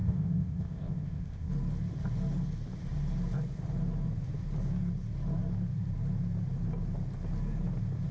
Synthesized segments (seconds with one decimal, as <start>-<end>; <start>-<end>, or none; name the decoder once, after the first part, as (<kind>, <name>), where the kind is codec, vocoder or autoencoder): 0.0-1.5 (codec, ZipCodec)